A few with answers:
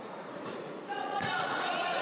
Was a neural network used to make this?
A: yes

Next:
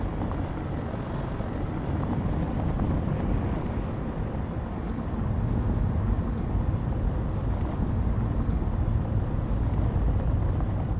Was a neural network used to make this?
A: no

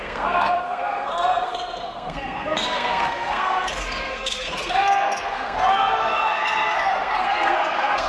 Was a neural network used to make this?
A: yes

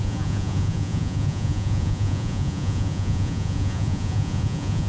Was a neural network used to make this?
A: yes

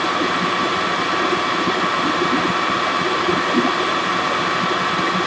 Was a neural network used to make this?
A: yes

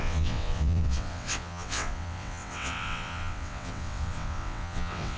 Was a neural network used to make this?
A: yes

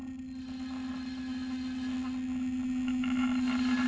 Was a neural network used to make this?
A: no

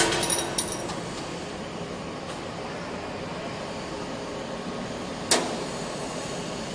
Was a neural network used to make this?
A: no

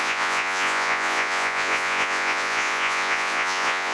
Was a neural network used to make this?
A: yes